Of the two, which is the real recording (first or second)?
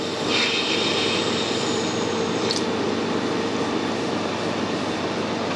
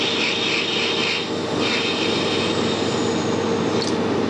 second